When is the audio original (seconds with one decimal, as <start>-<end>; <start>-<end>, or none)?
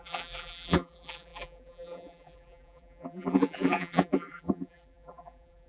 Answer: none